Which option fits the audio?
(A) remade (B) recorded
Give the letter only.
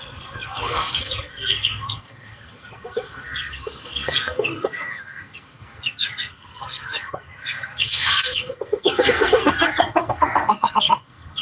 A